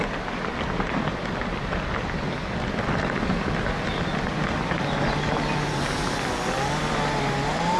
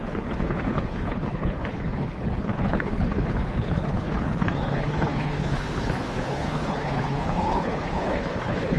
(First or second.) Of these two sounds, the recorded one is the first